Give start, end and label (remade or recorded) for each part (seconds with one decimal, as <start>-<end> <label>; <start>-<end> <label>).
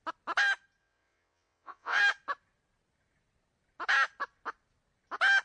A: 0.0-0.8 recorded; 0.8-2.0 remade; 2.0-5.4 recorded